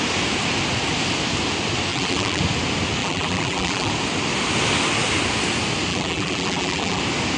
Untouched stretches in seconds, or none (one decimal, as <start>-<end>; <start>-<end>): 0.0-1.9; 2.4-3.0; 3.9-5.9; 7.0-7.4